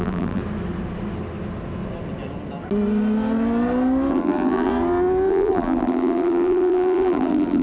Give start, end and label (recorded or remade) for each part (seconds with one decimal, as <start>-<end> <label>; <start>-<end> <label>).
0.0-0.4 remade; 0.4-4.1 recorded; 4.1-4.7 remade; 4.7-5.3 recorded; 5.3-7.6 remade